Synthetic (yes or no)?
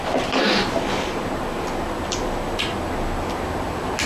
no